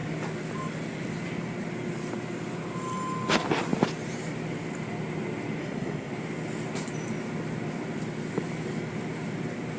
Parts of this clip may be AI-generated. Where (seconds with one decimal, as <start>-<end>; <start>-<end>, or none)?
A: 5.6-6.1